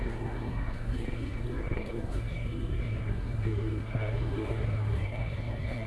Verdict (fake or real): fake